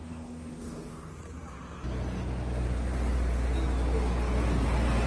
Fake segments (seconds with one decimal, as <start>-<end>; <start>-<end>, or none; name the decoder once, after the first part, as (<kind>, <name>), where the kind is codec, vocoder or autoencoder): 0.0-1.1 (codec, DAC)